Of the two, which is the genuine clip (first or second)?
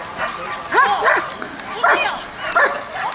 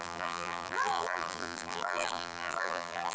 first